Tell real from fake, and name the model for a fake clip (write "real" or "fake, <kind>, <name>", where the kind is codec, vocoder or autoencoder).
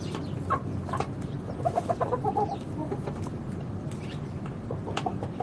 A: real